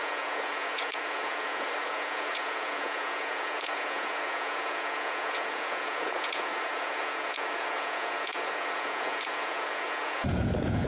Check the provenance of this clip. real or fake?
fake